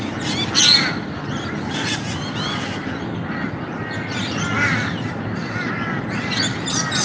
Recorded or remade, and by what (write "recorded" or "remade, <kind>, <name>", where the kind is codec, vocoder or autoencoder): recorded